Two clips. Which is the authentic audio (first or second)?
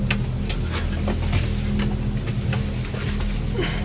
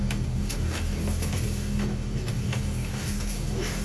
first